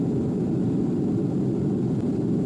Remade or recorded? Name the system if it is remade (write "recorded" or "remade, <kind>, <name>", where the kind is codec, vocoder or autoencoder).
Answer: recorded